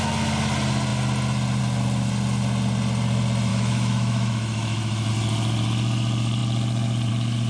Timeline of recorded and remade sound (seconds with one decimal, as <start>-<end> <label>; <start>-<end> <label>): 0.0-3.5 recorded; 3.5-5.1 remade; 5.1-7.5 recorded